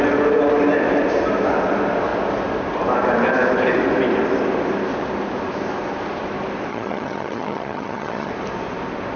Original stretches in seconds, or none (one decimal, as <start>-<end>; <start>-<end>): 0.0-6.7; 8.3-9.2